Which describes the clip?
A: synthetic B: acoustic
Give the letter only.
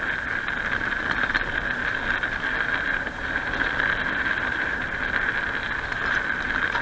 B